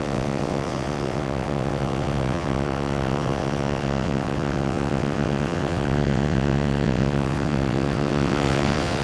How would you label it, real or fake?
fake